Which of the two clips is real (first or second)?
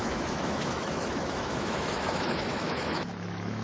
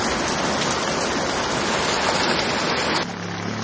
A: second